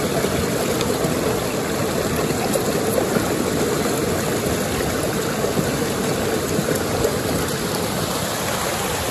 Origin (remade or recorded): recorded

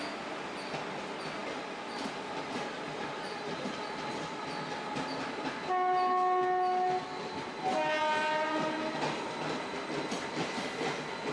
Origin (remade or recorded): recorded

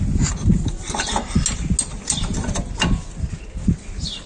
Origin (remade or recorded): recorded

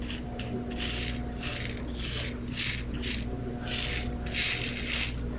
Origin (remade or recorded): recorded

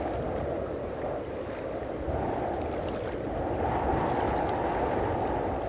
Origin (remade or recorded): recorded